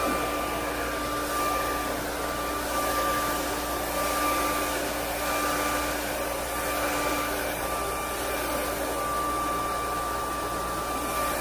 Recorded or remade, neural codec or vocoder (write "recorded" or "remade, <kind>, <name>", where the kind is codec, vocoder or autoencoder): recorded